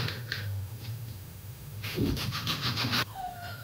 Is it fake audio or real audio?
fake